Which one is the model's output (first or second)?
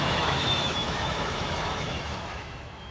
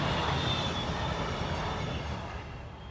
first